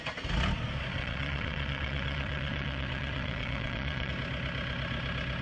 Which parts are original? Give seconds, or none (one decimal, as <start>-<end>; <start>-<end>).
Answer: 0.0-0.9; 4.1-5.4